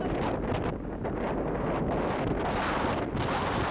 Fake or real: real